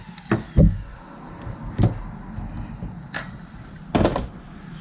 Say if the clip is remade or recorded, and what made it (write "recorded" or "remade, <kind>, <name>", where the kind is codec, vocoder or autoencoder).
recorded